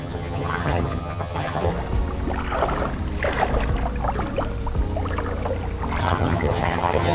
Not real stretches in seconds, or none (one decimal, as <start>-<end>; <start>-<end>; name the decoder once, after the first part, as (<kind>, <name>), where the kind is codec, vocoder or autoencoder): 0.0-1.7 (vocoder, HiFi-GAN); 6.0-7.1